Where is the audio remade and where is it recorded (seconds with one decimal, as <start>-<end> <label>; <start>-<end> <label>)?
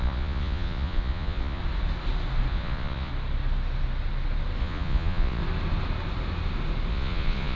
0.0-1.6 remade; 1.6-2.5 recorded; 2.5-3.1 remade; 3.1-4.6 recorded; 4.6-5.4 remade; 5.4-6.9 recorded; 6.9-7.6 remade